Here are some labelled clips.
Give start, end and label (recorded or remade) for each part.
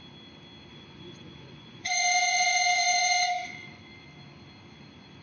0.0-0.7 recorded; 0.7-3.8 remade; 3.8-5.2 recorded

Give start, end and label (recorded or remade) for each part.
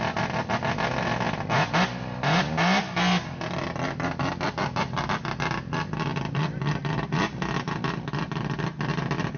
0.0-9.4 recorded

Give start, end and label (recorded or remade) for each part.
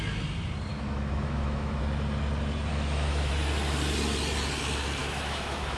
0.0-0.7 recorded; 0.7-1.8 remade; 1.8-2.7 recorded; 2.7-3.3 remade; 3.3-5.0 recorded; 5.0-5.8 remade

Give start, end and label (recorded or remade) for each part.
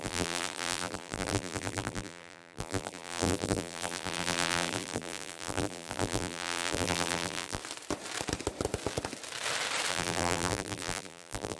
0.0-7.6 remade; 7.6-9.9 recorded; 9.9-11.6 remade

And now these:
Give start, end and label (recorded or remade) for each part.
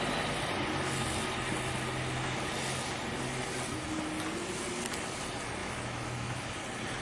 0.0-5.6 recorded; 5.6-6.6 remade; 6.6-7.0 recorded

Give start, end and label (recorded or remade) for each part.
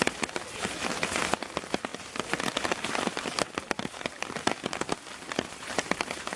0.0-6.4 recorded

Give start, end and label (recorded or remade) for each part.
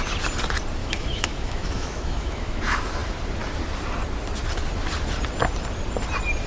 0.0-0.8 recorded; 0.8-2.6 remade; 2.6-6.5 recorded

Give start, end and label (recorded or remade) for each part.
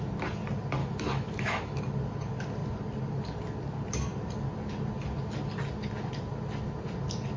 0.0-0.8 recorded; 0.8-1.8 remade; 1.8-7.4 recorded